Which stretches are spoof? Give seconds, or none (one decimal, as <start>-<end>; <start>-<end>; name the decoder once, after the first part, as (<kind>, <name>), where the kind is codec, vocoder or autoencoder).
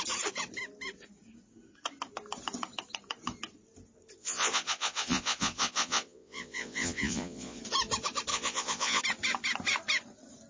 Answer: 4.2-7.6 (vocoder, Vocos); 8.3-9.0